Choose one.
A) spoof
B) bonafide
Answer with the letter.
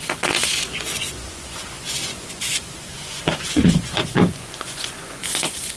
A